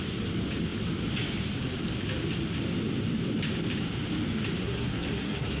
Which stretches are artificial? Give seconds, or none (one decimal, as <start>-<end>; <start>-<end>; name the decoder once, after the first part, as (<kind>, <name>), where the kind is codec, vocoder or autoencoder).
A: 4.6-5.6 (codec, SNAC)

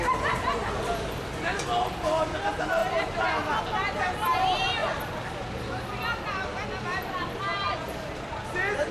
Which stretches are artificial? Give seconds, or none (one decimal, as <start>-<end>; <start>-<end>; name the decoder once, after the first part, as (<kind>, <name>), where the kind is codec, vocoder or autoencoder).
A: none

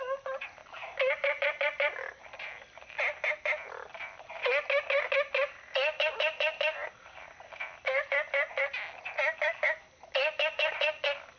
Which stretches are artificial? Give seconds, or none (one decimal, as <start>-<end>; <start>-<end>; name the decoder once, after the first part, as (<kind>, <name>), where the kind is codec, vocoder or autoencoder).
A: none